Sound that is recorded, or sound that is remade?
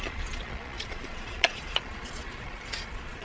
remade